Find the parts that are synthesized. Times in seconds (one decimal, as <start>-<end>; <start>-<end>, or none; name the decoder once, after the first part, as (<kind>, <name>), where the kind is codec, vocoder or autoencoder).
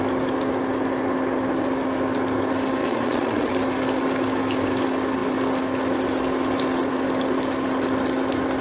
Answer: 2.8-3.5 (vocoder, Vocos)